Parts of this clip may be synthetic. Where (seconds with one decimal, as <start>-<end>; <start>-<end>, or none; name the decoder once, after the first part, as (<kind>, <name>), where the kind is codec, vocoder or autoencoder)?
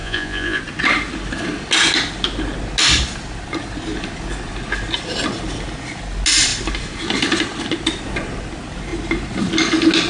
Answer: 0.0-0.6 (vocoder, Vocos)